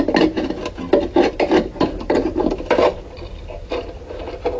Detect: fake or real real